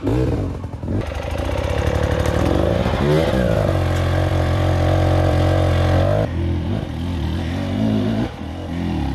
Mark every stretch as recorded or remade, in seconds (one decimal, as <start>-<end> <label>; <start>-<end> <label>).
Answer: 0.0-4.3 recorded; 4.3-5.4 remade; 5.4-9.1 recorded